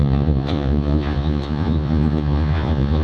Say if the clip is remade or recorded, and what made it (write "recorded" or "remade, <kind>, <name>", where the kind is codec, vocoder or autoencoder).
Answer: remade, vocoder, Vocos